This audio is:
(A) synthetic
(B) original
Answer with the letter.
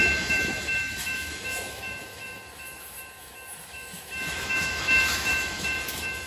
A